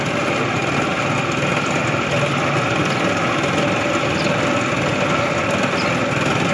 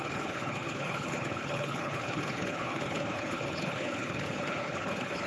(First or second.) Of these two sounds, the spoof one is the second